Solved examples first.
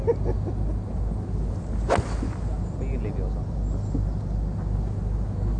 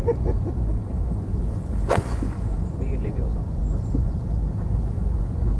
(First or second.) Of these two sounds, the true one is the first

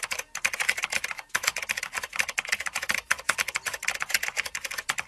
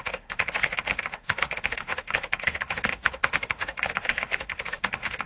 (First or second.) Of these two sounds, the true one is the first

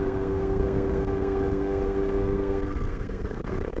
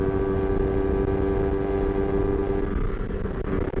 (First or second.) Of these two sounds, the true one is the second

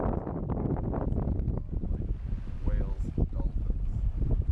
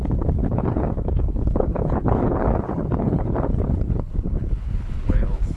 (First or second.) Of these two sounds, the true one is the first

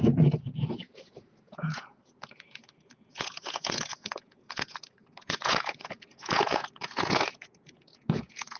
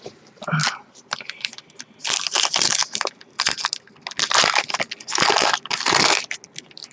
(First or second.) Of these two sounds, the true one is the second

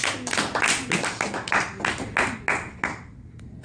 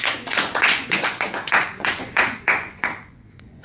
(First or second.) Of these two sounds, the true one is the first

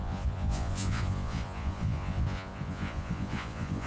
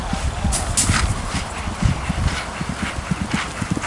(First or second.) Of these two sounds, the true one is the second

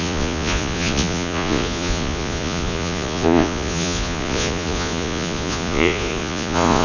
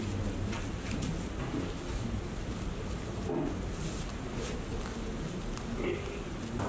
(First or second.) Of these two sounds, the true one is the second